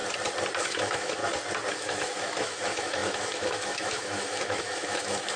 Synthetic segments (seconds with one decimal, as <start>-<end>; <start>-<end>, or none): 0.6-1.2; 1.7-5.4